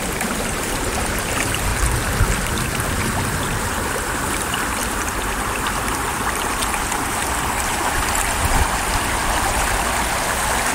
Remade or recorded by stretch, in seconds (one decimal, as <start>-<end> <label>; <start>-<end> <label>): 0.0-10.7 recorded